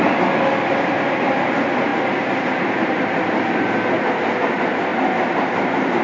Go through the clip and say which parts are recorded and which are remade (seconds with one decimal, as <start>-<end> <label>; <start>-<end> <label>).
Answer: 0.0-6.0 recorded